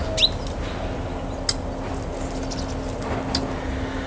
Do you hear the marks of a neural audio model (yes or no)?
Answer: no